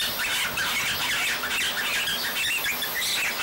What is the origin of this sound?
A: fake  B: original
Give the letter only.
B